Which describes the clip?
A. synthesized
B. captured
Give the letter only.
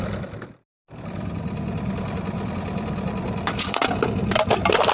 B